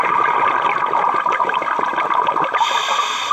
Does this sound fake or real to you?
real